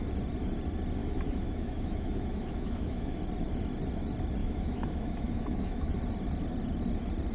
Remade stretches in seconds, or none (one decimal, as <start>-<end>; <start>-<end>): 1.0-3.2; 4.4-5.9

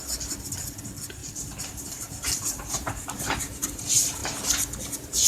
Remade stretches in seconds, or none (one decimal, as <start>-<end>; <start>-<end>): 1.2-3.8

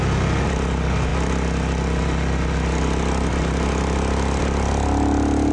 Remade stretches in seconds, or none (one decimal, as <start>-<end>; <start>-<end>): none

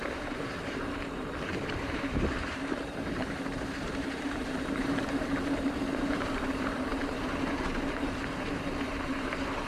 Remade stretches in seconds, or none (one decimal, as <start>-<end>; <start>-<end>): 0.0-9.7